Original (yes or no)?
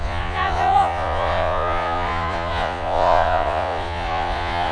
no